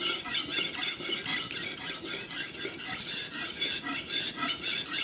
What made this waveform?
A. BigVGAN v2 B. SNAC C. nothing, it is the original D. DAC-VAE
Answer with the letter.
C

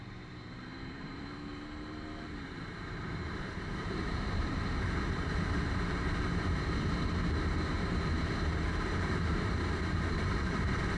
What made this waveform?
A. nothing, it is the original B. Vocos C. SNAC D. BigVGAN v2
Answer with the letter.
D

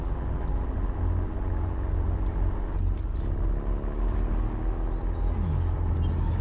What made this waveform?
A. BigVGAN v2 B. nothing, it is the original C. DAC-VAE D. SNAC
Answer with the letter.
B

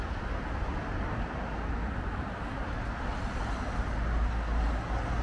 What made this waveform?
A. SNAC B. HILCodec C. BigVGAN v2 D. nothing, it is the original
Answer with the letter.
D